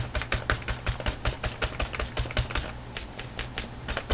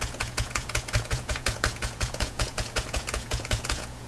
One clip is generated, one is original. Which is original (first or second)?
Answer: first